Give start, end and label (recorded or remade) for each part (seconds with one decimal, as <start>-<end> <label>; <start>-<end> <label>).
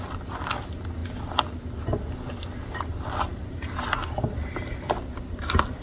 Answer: 0.0-3.3 recorded; 3.3-5.0 remade; 5.0-5.8 recorded